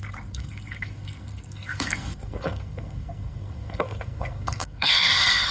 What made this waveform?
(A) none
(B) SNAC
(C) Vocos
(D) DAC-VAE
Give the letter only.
B